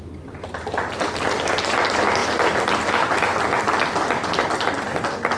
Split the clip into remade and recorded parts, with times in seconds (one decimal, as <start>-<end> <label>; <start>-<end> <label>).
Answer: 0.0-5.4 recorded